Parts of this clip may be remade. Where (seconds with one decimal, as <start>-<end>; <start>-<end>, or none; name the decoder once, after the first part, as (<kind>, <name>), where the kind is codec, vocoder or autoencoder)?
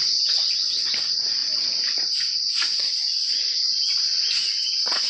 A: 4.1-5.1 (vocoder, Vocos)